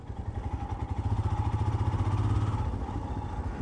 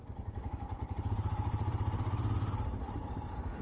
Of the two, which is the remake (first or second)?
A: second